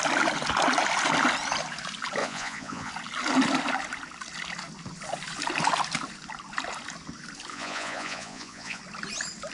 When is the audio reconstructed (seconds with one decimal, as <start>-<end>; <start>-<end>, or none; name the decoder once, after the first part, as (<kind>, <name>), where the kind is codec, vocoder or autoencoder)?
2.2-2.9 (vocoder, Vocos); 7.5-8.8